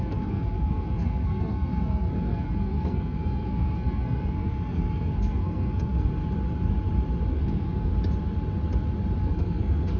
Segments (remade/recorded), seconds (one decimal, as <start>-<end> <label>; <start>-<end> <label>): 0.0-6.1 remade; 6.1-7.3 recorded; 7.3-7.9 remade; 7.9-9.2 recorded; 9.2-10.0 remade